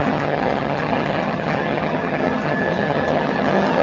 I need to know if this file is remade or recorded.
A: remade